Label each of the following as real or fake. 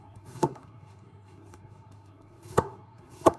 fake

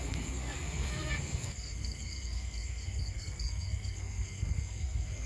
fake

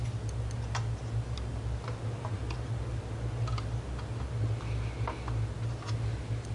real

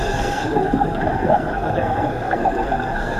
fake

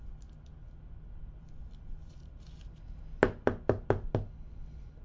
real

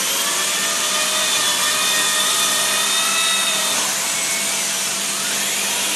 real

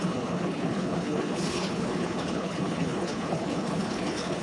fake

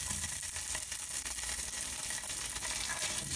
real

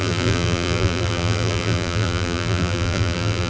fake